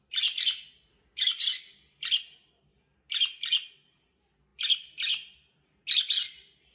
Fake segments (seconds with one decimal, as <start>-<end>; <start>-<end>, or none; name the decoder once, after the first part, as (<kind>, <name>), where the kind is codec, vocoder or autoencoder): none